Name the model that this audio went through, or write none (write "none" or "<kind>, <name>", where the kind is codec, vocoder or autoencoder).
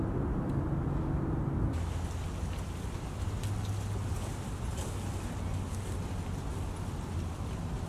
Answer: none